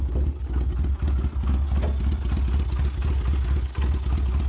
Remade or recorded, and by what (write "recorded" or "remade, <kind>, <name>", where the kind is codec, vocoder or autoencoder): recorded